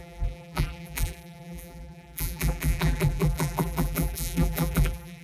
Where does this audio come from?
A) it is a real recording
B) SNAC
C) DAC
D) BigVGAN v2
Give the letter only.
D